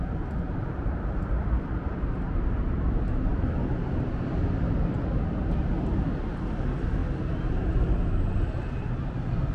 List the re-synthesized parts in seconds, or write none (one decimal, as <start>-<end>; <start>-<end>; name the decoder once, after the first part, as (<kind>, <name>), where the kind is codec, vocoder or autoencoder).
0.0-3.3 (vocoder, BigVGAN v2); 6.5-7.0; 8.3-9.5